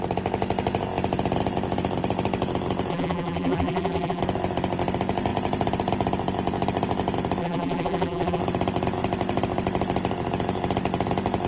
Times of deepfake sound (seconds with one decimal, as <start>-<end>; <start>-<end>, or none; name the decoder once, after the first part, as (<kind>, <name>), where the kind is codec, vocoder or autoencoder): 2.9-4.2 (vocoder, BigVGAN v2); 7.4-8.4